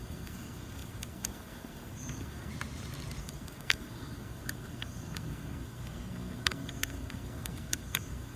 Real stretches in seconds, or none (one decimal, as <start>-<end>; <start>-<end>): 2.5-3.2